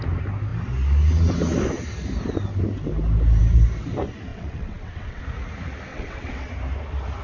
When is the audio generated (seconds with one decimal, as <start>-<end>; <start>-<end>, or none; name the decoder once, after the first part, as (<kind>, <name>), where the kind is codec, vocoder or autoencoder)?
4.3-5.2 (vocoder, WaveNeXt); 5.9-6.5

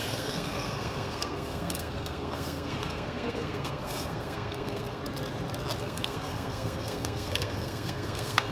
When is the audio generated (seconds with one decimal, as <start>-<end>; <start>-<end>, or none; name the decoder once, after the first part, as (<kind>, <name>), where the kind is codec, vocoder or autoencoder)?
0.0-5.0 (codec, SNAC); 5.8-8.5

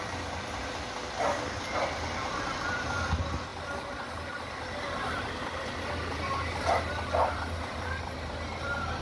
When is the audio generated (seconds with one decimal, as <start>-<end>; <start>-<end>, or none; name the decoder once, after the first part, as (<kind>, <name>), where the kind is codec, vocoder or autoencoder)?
none

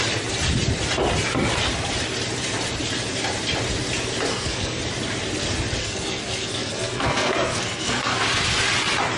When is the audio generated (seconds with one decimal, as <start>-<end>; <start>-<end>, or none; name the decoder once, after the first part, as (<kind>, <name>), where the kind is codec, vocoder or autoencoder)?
4.3-4.8 (codec, SNAC); 5.8-8.2

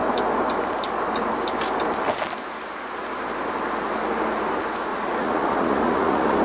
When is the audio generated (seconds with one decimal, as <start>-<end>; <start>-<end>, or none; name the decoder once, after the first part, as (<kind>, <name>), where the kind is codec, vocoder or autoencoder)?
4.9-6.4 (vocoder, Vocos)

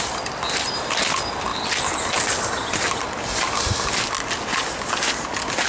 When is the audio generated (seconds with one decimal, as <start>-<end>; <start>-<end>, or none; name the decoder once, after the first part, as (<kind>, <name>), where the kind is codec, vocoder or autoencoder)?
none